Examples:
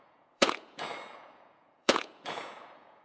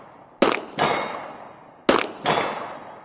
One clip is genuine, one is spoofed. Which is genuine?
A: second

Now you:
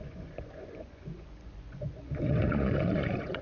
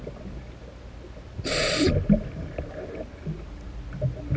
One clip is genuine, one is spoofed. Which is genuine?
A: second